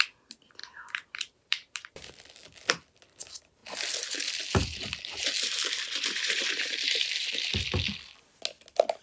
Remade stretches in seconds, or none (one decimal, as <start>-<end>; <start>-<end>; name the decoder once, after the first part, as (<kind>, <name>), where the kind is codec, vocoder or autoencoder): 0.6-2.1 (vocoder, BigVGAN v2); 3.6-7.5